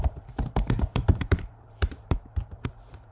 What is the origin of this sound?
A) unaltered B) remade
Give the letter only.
B